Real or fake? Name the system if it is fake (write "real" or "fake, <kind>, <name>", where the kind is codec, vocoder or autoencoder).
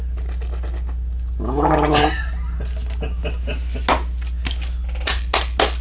real